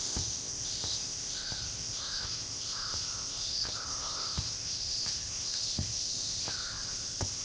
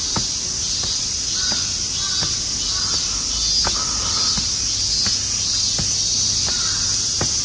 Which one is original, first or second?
second